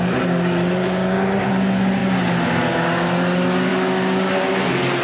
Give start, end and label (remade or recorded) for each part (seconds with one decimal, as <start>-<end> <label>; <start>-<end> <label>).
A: 0.0-0.8 recorded; 0.8-1.5 remade; 1.5-5.0 recorded